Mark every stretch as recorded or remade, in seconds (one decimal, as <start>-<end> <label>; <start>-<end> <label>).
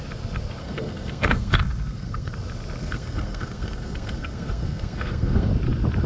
0.0-0.6 recorded; 0.6-2.3 remade; 2.3-2.8 recorded; 2.8-5.5 remade; 5.5-6.1 recorded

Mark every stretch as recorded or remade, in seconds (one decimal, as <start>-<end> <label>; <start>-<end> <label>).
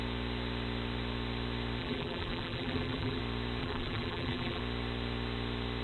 0.0-1.8 recorded; 1.8-3.2 remade; 3.2-3.6 recorded; 3.6-4.6 remade; 4.6-5.8 recorded